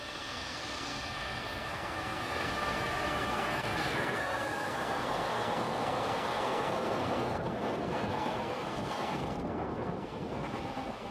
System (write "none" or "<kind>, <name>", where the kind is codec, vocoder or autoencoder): codec, SNAC